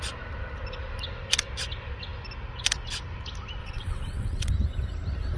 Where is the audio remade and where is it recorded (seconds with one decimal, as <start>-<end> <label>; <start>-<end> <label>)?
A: 0.0-3.6 recorded; 3.6-4.5 remade; 4.5-5.4 recorded